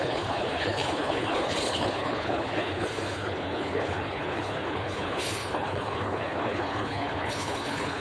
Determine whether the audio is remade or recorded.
remade